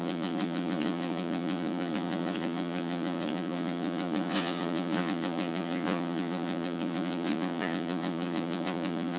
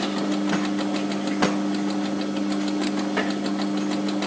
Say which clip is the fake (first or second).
first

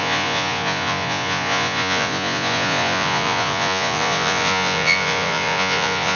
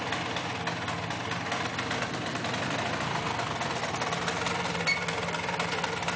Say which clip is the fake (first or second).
first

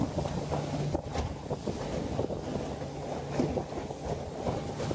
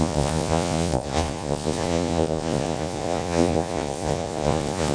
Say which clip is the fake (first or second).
second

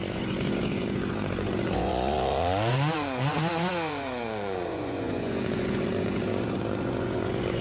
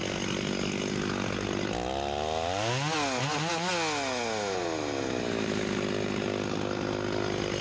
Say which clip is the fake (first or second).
first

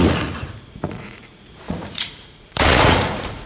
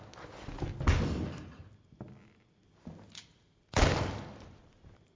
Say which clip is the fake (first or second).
first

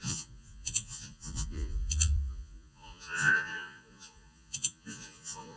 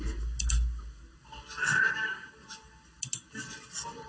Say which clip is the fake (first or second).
first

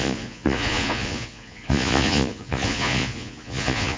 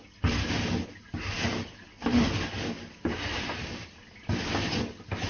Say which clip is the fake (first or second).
first